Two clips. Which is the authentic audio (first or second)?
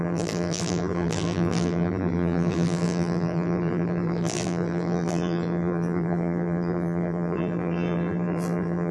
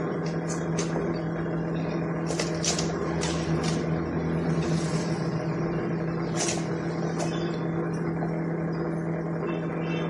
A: second